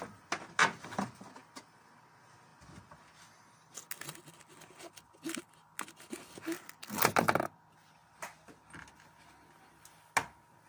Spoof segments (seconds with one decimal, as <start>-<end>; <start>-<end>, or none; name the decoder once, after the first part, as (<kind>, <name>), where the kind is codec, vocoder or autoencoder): none